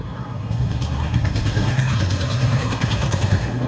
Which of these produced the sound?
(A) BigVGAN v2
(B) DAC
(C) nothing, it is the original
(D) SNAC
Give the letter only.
D